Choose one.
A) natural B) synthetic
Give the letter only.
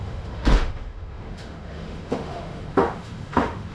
B